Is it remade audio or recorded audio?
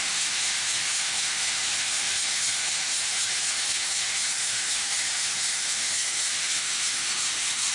remade